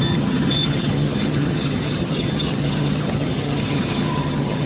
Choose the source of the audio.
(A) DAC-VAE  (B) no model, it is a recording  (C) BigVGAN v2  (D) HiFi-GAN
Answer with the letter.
D